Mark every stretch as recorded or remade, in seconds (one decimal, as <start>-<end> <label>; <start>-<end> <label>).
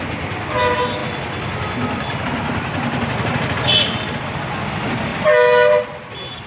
0.0-6.5 recorded